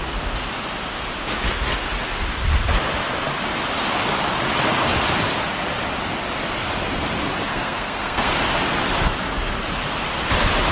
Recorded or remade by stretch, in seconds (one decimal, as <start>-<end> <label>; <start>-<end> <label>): 0.0-7.5 recorded; 7.5-8.3 remade; 8.3-10.7 recorded